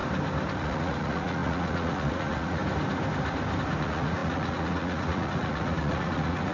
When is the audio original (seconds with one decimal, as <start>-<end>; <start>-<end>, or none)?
0.0-0.6; 2.6-3.8